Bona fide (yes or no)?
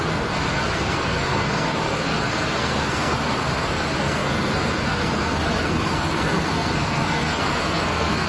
no